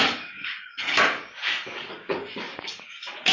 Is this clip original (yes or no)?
no